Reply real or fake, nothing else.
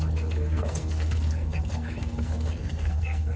fake